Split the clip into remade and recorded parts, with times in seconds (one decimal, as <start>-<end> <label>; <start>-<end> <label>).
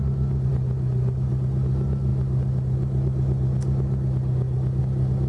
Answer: 0.0-5.3 recorded